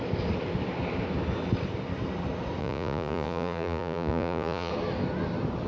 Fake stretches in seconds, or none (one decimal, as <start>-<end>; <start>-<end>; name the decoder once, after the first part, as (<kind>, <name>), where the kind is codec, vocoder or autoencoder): 2.6-4.7 (vocoder, Vocos)